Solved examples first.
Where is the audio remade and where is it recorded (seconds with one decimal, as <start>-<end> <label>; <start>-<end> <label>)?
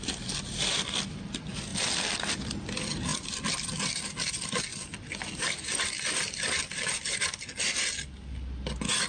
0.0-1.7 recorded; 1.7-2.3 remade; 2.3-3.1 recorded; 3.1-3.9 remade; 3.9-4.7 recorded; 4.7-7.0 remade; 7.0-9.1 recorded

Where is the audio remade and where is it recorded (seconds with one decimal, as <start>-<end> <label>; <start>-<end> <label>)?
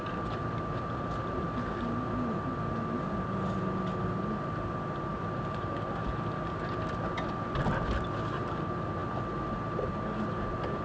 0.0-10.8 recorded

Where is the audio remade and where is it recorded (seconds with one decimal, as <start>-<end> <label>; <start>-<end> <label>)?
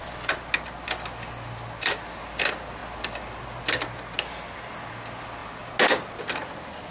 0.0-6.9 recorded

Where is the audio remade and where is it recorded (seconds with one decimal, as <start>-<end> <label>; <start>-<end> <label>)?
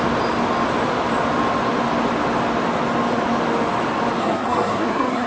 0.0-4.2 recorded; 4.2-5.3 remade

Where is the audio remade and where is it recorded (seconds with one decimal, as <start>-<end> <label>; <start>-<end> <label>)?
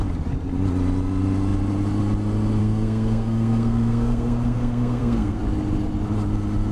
0.0-2.6 recorded; 2.6-5.4 remade; 5.4-6.7 recorded